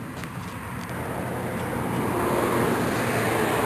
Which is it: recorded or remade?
recorded